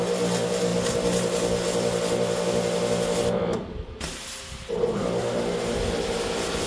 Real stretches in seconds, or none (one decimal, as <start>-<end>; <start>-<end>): 0.0-6.7